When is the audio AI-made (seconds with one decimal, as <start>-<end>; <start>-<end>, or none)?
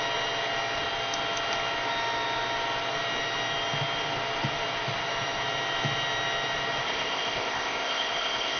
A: 6.8-8.6